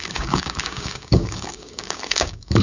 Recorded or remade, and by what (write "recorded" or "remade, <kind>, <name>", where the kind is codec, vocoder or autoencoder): remade, codec, DAC